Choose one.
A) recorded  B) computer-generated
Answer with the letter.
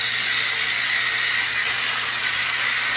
A